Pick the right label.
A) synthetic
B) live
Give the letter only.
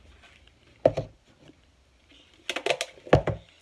B